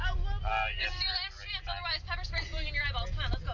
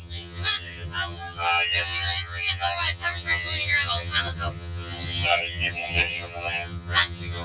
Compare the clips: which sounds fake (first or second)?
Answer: second